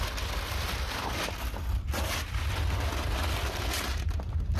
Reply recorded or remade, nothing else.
recorded